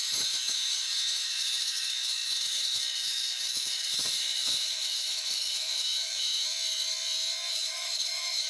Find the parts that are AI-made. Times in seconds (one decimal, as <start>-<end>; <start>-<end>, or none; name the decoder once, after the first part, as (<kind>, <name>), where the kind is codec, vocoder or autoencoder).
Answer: 0.0-6.5 (autoencoder, DAC-VAE); 7.5-8.5